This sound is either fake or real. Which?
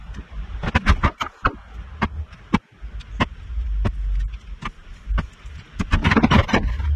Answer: real